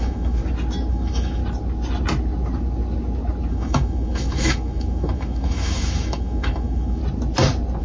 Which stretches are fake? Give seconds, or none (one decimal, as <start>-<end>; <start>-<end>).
0.0-0.4; 0.9-1.4; 3.5-7.0